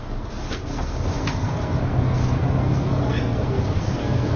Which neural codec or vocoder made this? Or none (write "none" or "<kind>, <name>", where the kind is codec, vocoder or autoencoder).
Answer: codec, SNAC